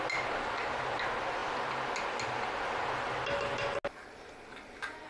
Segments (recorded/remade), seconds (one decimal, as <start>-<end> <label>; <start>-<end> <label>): 0.0-5.1 recorded